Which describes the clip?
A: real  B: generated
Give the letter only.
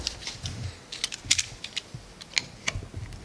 A